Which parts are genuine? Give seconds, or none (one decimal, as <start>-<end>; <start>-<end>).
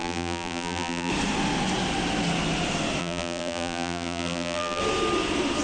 1.1-3.0; 4.8-5.6